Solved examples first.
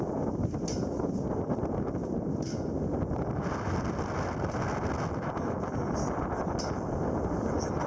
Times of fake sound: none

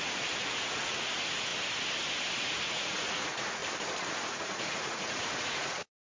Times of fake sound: 0.0-1.5 (vocoder, Vocos); 2.4-3.6; 4.3-6.0

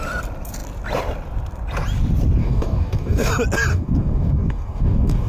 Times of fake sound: 2.4-3.3 (codec, DAC); 3.7-5.3

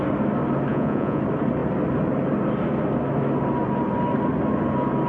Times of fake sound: 0.7-1.2 (vocoder, Vocos)

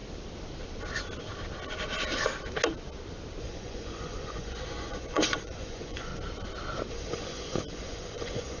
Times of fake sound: 3.4-6.1 (vocoder, Vocos); 6.9-8.6

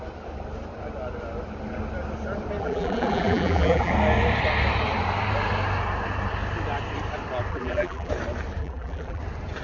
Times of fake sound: 2.6-3.9 (vocoder, BigVGAN v2); 7.5-8.1; 8.6-9.2